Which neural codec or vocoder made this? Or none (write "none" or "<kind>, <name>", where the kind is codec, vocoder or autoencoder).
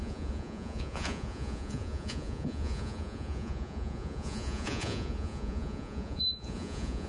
vocoder, Vocos